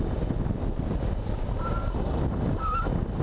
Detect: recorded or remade recorded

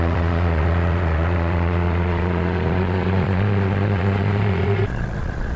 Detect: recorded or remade remade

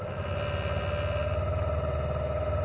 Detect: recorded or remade recorded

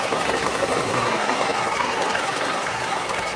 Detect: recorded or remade remade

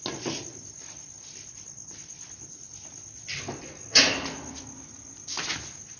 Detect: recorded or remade recorded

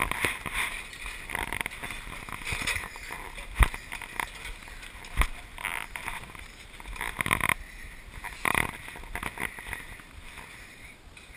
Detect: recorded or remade recorded